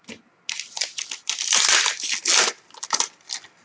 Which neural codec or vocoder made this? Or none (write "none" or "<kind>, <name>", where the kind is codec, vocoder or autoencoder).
none